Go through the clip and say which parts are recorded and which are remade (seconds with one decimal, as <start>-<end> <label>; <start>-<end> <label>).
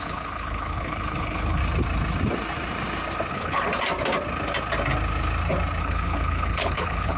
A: 0.0-1.6 remade; 1.6-3.3 recorded; 3.3-3.7 remade; 3.7-5.8 recorded; 5.8-7.2 remade